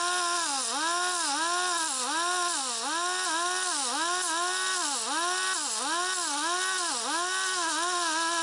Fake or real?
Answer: real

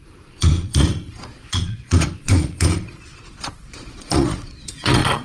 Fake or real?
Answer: fake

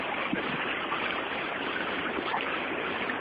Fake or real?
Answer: fake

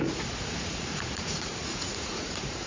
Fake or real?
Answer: fake